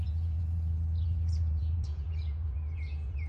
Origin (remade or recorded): remade